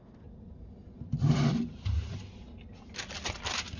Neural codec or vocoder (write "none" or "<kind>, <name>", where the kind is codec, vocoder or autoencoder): none